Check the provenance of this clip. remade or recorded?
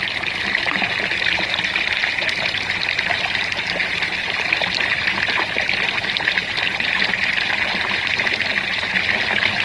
recorded